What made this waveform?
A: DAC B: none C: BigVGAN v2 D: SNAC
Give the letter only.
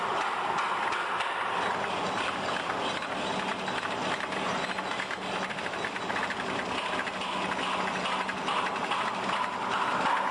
B